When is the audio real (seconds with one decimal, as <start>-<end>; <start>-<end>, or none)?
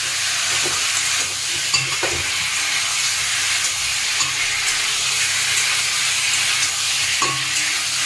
0.0-8.1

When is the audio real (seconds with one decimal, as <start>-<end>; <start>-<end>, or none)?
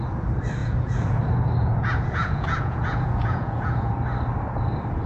0.0-0.6; 1.2-1.6; 3.9-5.1